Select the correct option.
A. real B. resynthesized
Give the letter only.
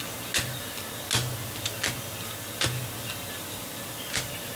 A